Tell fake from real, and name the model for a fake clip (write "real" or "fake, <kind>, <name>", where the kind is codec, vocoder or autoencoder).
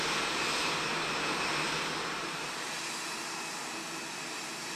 real